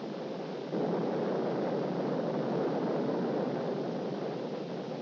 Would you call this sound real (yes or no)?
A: yes